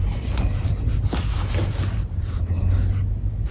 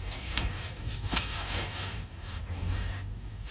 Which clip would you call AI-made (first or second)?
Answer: second